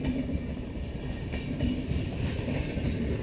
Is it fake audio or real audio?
real